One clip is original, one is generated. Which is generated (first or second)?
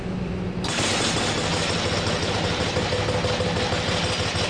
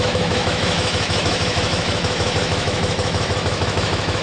second